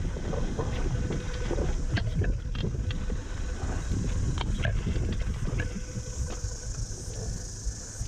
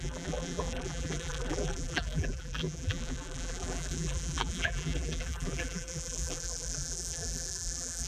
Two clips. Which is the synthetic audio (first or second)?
second